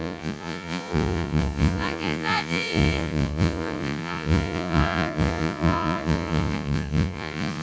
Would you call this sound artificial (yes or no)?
yes